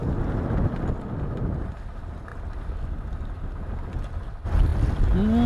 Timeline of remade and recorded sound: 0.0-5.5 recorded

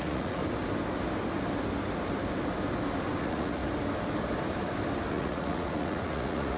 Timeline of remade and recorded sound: 0.0-0.4 remade; 0.4-3.2 recorded; 3.2-3.6 remade; 3.6-5.1 recorded; 5.1-6.6 remade